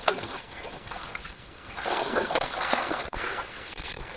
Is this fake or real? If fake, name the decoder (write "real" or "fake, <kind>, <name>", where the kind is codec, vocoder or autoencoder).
fake, codec, SNAC